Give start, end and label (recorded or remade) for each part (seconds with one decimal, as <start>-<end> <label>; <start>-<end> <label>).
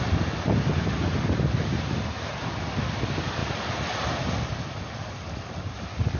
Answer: 0.0-3.4 recorded; 3.4-4.2 remade; 4.2-6.2 recorded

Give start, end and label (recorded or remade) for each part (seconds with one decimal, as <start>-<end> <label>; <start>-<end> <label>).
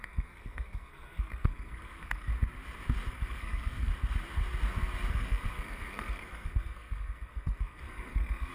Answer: 0.0-2.3 remade; 2.3-3.1 recorded; 3.1-3.9 remade; 3.9-5.1 recorded; 5.1-8.5 remade